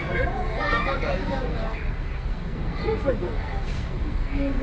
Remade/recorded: remade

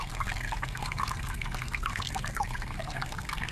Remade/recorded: remade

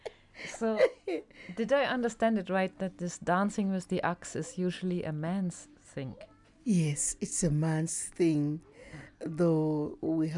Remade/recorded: recorded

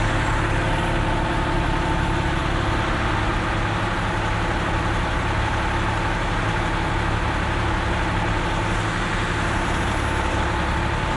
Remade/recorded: recorded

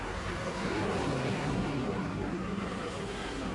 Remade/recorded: remade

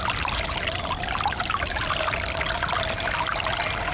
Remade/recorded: recorded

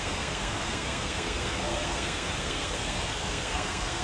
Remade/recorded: remade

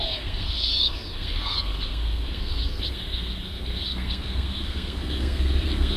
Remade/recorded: remade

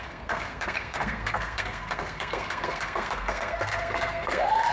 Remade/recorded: remade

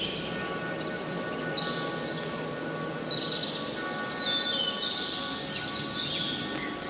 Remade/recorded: recorded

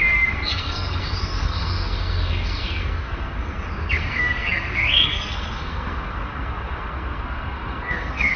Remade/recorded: remade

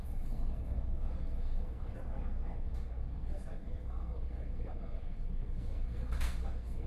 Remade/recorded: remade